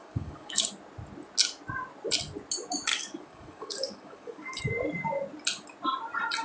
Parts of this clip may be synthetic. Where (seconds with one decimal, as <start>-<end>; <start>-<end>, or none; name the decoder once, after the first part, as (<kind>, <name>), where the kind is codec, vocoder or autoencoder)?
0.0-0.7 (codec, DAC); 2.9-4.6